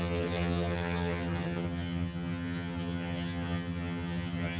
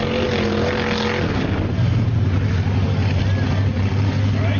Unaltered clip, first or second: second